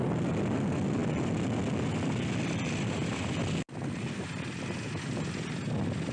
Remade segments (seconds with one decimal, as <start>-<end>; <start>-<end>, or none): none